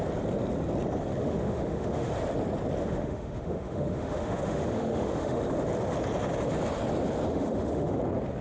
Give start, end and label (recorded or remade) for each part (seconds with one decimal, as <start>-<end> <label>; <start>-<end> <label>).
0.0-1.2 recorded; 1.2-2.1 remade; 2.1-2.8 recorded; 2.8-5.4 remade; 5.4-7.3 recorded; 7.3-8.0 remade; 8.0-8.4 recorded